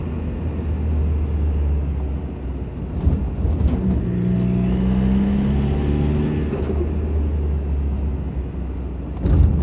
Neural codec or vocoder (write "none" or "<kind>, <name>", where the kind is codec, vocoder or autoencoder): none